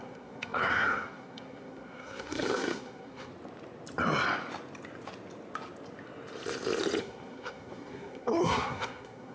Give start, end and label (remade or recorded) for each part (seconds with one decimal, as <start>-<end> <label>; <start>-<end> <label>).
0.0-3.3 remade; 3.3-7.0 recorded; 7.0-9.3 remade